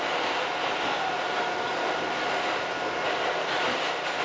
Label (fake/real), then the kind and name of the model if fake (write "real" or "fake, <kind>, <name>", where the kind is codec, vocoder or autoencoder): real